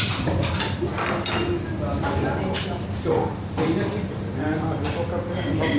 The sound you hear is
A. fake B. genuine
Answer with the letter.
B